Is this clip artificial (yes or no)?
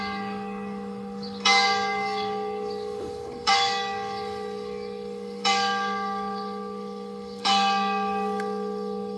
yes